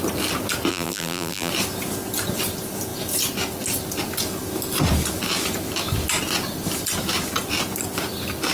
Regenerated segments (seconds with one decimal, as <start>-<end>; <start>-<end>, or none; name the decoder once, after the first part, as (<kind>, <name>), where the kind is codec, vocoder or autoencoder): 0.7-1.5 (vocoder, BigVGAN v2)